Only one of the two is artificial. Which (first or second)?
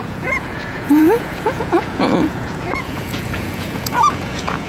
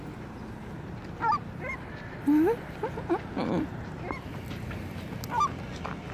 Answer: first